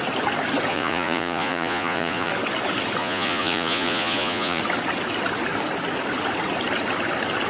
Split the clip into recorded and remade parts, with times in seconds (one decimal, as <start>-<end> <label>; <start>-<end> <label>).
0.0-0.7 recorded; 0.7-2.3 remade; 2.3-3.0 recorded; 3.0-4.6 remade; 4.6-7.5 recorded